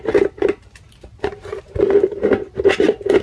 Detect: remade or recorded remade